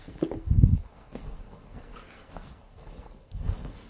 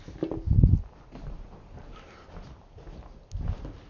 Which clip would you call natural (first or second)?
second